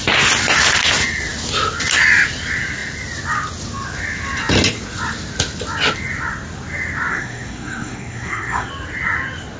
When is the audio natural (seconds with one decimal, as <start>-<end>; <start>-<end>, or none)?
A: 0.0-7.1; 8.7-9.6